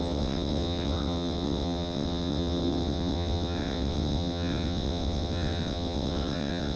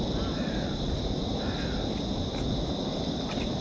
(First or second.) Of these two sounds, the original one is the second